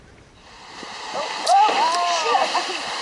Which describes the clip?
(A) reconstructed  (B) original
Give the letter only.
A